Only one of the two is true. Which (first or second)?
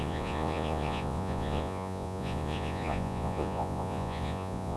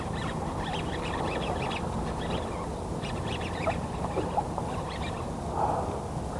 second